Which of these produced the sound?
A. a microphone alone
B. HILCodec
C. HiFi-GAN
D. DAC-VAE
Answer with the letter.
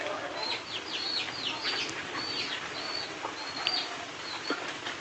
A